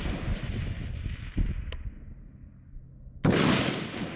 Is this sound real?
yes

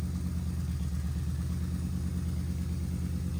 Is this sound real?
yes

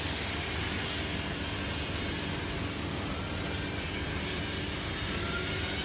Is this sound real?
yes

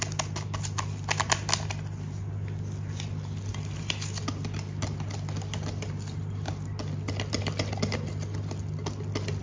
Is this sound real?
yes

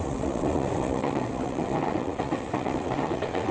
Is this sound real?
no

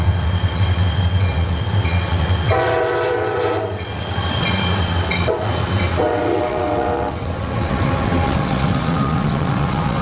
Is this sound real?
no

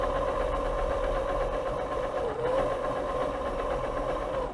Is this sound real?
no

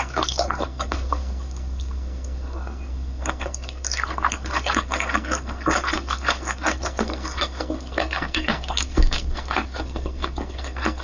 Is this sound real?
no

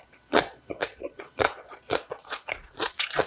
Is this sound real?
no